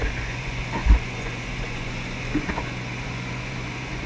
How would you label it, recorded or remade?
remade